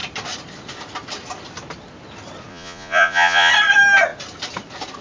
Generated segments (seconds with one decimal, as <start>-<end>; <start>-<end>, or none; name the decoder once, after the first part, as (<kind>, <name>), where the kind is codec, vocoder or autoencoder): 2.5-3.5 (vocoder, Vocos)